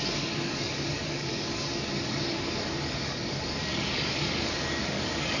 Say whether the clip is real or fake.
fake